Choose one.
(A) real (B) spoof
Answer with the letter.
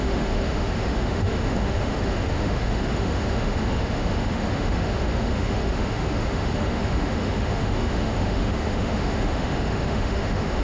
B